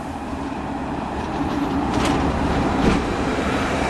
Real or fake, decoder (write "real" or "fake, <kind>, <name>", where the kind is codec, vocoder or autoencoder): fake, vocoder, BigVGAN v2